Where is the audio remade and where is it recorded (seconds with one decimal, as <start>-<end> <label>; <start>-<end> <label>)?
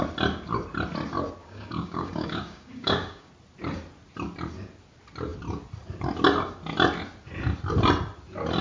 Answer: 0.0-1.4 recorded; 1.4-3.3 remade; 3.3-8.6 recorded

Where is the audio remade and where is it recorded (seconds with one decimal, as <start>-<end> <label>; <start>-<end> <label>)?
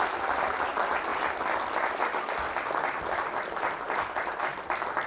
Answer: 0.0-5.1 recorded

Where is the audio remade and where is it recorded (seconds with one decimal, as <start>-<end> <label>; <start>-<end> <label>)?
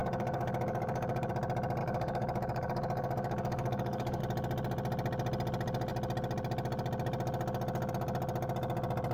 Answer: 0.0-1.3 remade; 1.3-1.8 recorded; 1.8-4.2 remade; 4.2-9.1 recorded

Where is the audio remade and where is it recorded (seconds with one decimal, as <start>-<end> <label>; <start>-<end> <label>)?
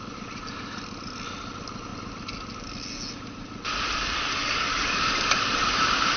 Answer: 0.0-4.4 recorded; 4.4-5.1 remade; 5.1-6.2 recorded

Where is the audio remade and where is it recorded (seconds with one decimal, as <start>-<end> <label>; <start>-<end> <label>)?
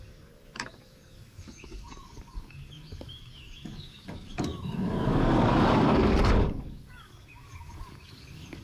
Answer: 0.0-8.6 remade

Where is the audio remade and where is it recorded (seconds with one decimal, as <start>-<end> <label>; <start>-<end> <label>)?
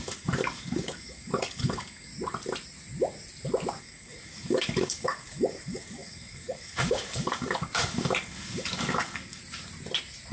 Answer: 0.0-2.1 remade; 2.1-3.8 recorded; 3.8-9.4 remade; 9.4-10.3 recorded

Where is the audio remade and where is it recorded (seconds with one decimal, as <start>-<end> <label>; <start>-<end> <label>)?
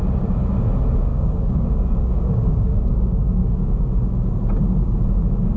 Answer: 0.0-1.1 recorded; 1.1-3.9 remade; 3.9-5.6 recorded